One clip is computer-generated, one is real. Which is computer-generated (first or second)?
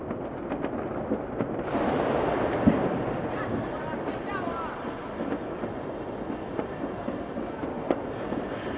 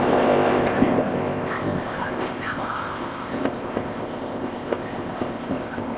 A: second